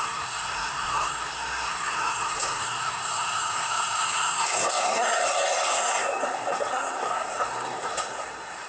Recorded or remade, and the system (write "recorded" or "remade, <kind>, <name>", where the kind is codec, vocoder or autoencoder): remade, codec, SNAC